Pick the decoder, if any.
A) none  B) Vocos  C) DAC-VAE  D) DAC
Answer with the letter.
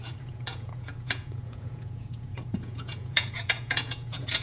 B